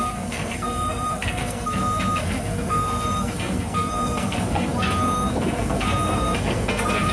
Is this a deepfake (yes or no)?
yes